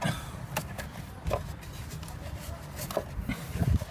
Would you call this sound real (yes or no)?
yes